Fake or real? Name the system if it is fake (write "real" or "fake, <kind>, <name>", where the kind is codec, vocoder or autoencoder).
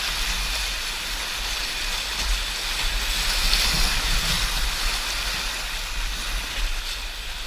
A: real